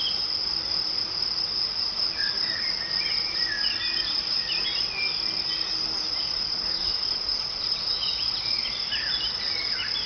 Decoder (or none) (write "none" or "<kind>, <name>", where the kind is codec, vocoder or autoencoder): none